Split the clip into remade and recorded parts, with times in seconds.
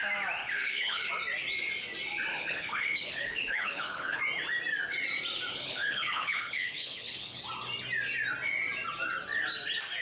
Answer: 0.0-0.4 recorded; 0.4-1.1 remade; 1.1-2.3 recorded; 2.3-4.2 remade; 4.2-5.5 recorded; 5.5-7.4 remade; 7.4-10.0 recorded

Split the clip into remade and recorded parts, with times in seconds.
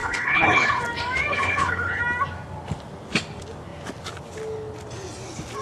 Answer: 0.0-0.8 remade; 0.8-1.3 recorded; 1.3-2.0 remade; 2.0-5.6 recorded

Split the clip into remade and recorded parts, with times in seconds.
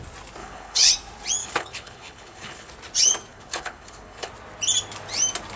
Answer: 0.0-0.4 recorded; 0.4-0.9 remade; 0.9-1.4 recorded; 1.4-2.7 remade; 2.7-3.3 recorded; 3.3-4.3 remade; 4.3-5.6 recorded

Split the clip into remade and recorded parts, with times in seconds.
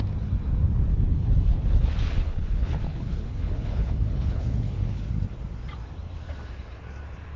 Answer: 0.0-0.9 recorded; 0.9-5.0 remade; 5.0-7.4 recorded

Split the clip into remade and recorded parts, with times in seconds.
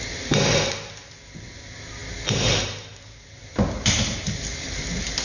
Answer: 0.0-5.2 recorded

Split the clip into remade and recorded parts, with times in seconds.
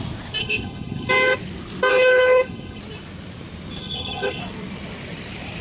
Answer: 0.0-0.4 recorded; 0.4-1.1 remade; 1.1-1.9 recorded; 1.9-2.8 remade; 2.8-3.8 recorded; 3.8-4.4 remade; 4.4-5.6 recorded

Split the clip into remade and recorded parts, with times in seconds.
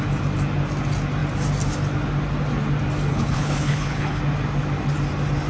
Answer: 0.0-3.1 recorded; 3.1-4.2 remade; 4.2-5.5 recorded